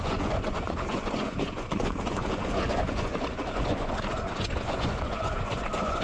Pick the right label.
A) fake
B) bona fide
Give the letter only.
A